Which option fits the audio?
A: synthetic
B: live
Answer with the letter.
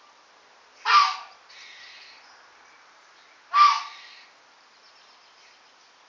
B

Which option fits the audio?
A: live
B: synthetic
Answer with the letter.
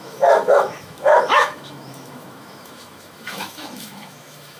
B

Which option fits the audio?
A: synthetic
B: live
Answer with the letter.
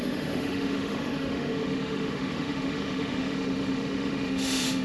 A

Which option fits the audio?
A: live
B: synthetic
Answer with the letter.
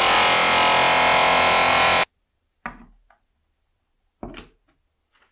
A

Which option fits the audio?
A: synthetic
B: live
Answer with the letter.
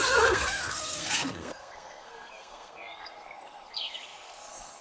A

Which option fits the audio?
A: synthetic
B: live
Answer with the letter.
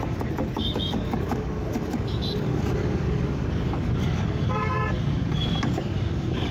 A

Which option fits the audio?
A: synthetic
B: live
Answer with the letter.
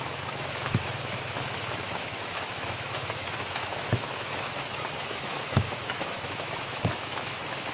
A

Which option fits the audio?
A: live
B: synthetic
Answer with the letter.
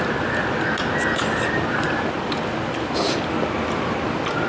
A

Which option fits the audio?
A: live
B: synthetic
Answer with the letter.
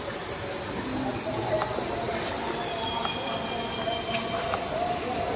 A